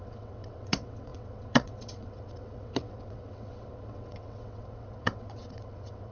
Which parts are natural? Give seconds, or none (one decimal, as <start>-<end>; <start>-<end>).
none